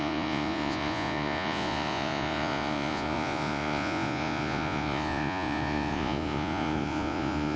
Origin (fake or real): fake